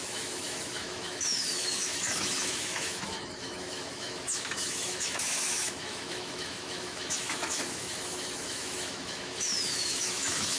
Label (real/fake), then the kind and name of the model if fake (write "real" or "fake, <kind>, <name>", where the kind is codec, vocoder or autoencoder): fake, autoencoder, DAC-VAE